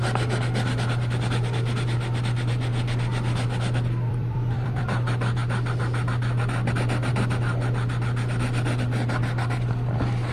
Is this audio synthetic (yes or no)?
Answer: yes